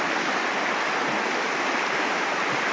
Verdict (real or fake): real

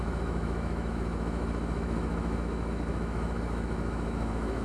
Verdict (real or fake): fake